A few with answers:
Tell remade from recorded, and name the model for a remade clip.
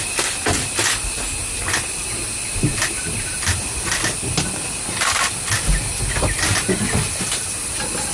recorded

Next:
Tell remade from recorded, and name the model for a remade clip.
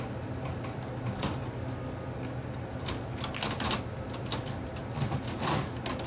recorded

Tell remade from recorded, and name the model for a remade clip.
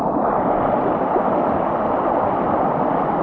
recorded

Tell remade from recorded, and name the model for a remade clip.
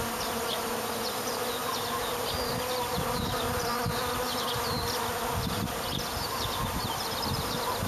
recorded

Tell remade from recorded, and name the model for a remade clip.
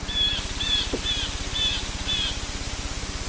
recorded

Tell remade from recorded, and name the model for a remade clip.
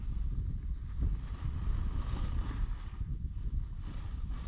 recorded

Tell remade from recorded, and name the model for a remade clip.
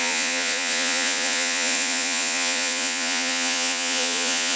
remade, vocoder, Vocos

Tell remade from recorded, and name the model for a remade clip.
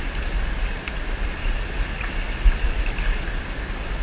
recorded